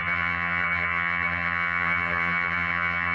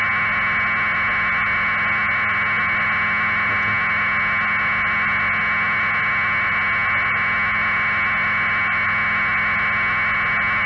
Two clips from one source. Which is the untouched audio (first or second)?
second